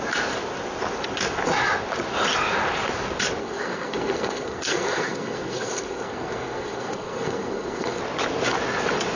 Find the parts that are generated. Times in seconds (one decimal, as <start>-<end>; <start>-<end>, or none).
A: 3.4-8.0

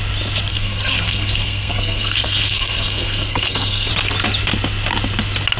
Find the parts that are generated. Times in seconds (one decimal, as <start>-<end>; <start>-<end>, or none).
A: 0.5-3.9

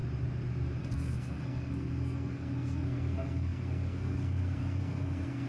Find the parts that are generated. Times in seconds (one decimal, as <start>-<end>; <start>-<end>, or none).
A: 0.8-5.5

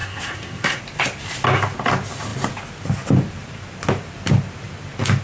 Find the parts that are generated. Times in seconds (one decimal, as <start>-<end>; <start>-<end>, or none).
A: 0.0-0.8

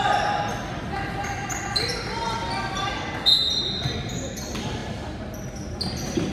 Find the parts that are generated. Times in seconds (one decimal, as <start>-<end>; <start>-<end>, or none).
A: none

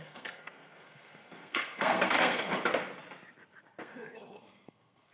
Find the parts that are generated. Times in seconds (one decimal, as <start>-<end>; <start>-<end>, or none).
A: 0.0-2.5; 3.8-5.1

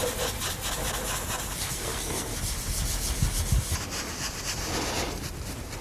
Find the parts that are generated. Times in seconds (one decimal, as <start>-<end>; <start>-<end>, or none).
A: 1.6-2.3